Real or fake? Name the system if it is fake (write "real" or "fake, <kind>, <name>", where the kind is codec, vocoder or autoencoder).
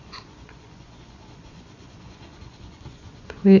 fake, vocoder, Vocos